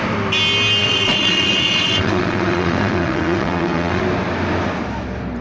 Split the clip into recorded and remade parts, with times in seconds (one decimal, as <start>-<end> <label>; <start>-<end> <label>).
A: 0.0-0.8 recorded; 0.8-4.0 remade; 4.0-5.4 recorded